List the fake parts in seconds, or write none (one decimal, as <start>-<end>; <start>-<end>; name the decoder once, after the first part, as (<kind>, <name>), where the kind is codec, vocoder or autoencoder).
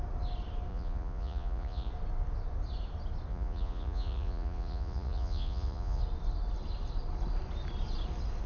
0.7-1.9 (vocoder, Vocos); 3.3-6.0